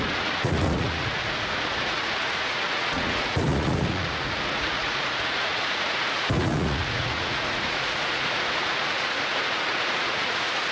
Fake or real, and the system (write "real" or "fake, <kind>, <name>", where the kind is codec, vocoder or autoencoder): fake, vocoder, Vocos